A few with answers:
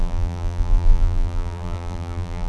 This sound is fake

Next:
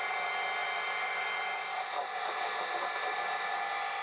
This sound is real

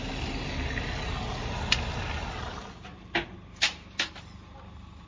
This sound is real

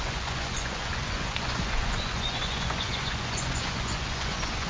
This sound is fake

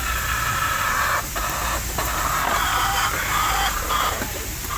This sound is real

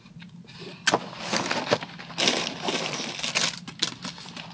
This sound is real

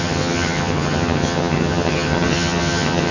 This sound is fake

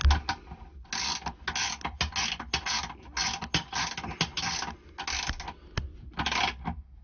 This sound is real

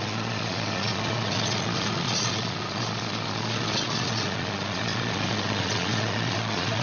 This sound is fake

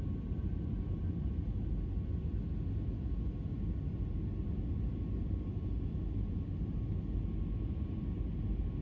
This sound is real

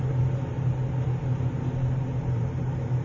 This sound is real